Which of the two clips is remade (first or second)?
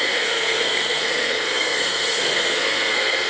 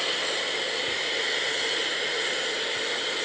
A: first